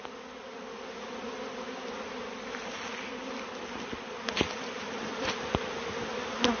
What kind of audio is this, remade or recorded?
recorded